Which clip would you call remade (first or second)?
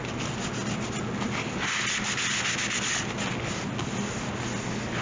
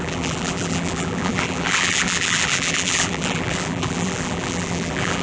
second